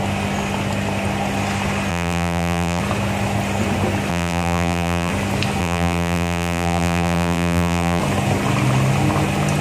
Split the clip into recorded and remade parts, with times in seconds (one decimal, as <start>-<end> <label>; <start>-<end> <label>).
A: 0.0-1.9 recorded; 1.9-2.8 remade; 2.8-4.1 recorded; 4.1-5.1 remade; 5.1-5.6 recorded; 5.6-8.0 remade; 8.0-9.6 recorded